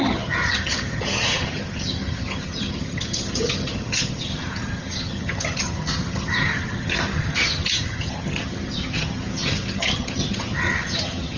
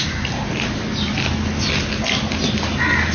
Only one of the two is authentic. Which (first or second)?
second